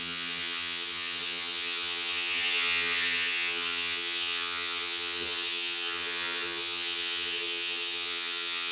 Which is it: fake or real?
fake